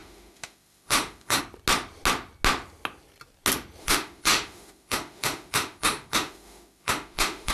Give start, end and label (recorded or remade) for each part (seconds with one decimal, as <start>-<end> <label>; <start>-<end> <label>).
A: 0.0-1.4 remade; 1.4-3.8 recorded; 3.8-7.5 remade